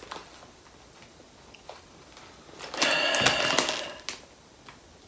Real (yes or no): yes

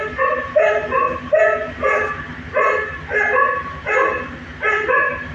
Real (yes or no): yes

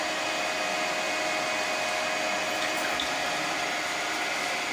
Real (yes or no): yes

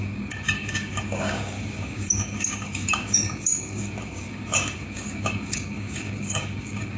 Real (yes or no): no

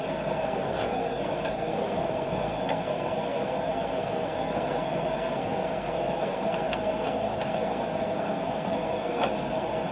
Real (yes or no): no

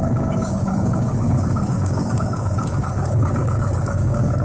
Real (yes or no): no